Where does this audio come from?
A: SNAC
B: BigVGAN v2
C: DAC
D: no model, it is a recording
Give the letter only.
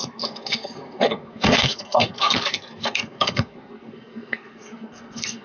A